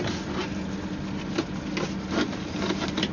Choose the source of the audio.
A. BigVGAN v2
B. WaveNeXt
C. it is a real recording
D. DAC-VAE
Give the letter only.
C